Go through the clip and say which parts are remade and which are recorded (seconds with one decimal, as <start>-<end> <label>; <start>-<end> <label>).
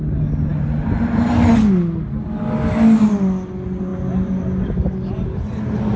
0.0-6.0 recorded